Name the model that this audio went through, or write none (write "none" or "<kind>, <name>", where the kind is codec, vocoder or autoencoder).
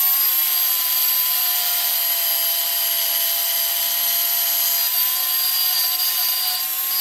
none